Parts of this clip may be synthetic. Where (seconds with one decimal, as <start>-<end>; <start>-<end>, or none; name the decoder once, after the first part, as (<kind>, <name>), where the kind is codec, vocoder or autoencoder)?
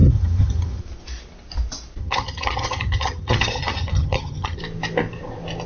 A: 0.0-0.8 (vocoder, HiFi-GAN); 2.0-4.6